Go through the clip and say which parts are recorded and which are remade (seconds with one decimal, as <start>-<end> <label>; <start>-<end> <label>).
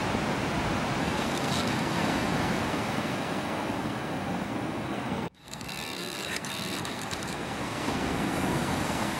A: 0.0-1.0 recorded; 1.0-9.2 remade